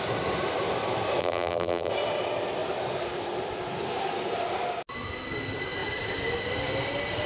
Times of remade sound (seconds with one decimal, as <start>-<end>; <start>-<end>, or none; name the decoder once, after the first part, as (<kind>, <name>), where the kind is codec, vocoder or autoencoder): 1.2-1.9 (vocoder, BigVGAN v2)